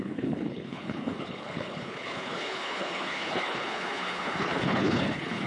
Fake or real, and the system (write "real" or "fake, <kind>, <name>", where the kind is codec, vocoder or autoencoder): fake, codec, HILCodec